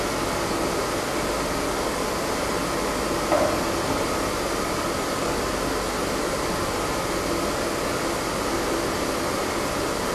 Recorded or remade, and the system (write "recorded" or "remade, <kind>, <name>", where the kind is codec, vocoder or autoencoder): recorded